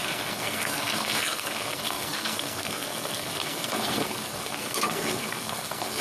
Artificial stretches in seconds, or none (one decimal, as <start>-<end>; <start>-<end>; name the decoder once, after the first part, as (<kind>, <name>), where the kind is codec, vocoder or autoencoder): 0.0-6.0 (codec, SNAC)

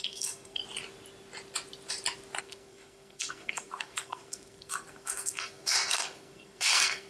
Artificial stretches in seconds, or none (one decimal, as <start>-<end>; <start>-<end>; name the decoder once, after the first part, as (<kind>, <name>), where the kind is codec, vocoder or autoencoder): 0.0-0.6 (codec, SNAC); 2.4-7.1

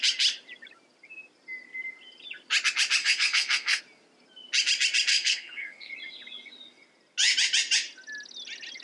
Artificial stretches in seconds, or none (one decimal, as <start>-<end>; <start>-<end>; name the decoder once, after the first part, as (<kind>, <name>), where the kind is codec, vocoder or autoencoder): 3.0-3.8 (codec, SNAC); 5.1-5.9